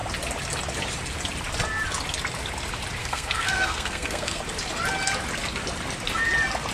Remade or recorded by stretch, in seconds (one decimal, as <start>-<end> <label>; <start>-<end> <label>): 0.0-3.0 recorded; 3.0-4.4 remade; 4.4-6.7 recorded

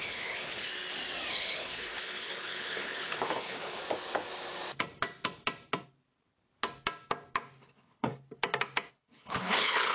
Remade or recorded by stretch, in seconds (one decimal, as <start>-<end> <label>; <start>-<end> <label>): 0.0-0.7 remade; 0.7-1.3 recorded; 1.3-3.8 remade; 3.8-7.6 recorded; 7.6-8.1 remade; 8.1-8.9 recorded; 8.9-9.9 remade